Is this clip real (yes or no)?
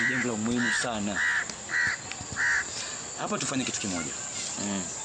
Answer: yes